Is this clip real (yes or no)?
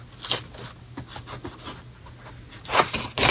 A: yes